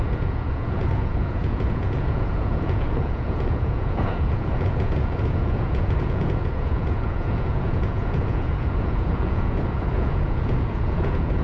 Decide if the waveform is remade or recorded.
remade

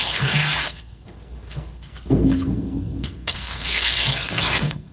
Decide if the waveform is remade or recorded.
remade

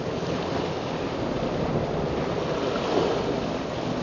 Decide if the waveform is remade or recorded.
recorded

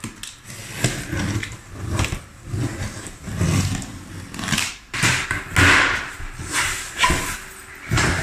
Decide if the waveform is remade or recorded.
recorded